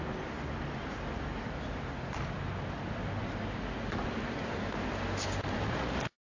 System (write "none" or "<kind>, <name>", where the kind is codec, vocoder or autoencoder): none